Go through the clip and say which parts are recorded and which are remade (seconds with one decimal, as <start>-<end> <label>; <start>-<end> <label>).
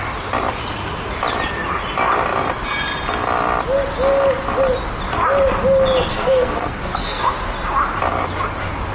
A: 0.0-6.1 recorded; 6.1-7.2 remade; 7.2-8.9 recorded